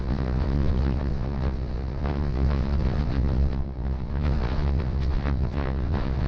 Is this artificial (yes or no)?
yes